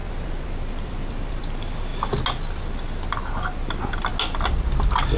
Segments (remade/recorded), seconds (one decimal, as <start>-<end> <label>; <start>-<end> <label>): 0.0-1.4 remade; 1.4-5.2 recorded

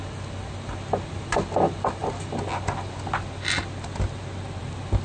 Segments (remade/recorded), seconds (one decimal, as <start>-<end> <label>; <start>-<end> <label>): 0.0-5.0 recorded